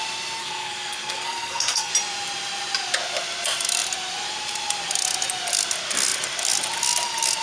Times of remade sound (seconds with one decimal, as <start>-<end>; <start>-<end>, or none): 0.4-1.9